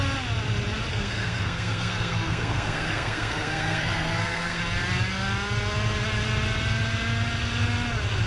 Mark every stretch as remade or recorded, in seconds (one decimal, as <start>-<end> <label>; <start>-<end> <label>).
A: 0.0-0.9 recorded; 0.9-4.6 remade; 4.6-8.3 recorded